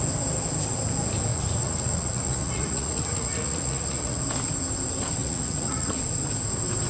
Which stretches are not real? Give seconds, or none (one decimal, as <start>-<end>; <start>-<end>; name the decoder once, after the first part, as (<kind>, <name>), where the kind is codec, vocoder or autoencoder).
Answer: 1.3-4.2 (vocoder, Vocos); 5.2-6.0